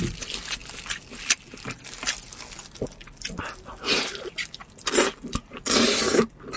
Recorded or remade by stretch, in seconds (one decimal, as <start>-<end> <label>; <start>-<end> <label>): 0.0-6.6 recorded